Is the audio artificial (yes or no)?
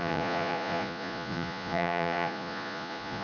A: yes